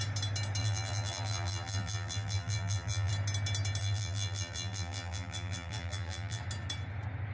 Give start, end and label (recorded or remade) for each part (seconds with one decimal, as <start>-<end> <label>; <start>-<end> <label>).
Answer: 0.0-0.6 recorded; 0.6-3.1 remade; 3.1-3.8 recorded; 3.8-6.4 remade; 6.4-7.3 recorded